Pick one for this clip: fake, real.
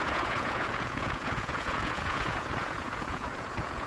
fake